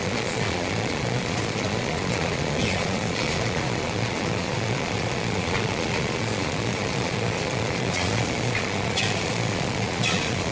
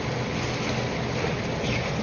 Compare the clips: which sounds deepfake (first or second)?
first